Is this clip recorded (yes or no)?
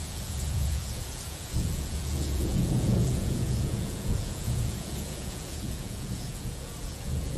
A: no